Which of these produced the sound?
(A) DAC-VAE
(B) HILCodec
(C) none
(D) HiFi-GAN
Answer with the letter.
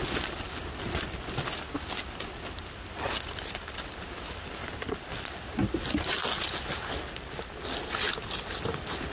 C